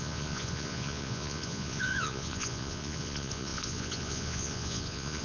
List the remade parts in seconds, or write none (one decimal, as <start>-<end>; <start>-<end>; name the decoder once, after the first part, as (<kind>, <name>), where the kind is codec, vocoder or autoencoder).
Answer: 0.0-5.2 (vocoder, Vocos)